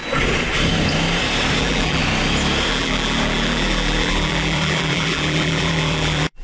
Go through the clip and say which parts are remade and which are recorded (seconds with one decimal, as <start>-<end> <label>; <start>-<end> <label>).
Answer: 0.0-1.6 recorded; 1.6-2.0 remade; 2.0-2.7 recorded; 2.7-6.4 remade